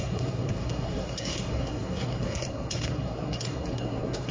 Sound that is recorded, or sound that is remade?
remade